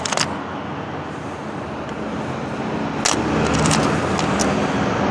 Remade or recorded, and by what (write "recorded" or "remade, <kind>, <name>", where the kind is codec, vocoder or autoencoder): recorded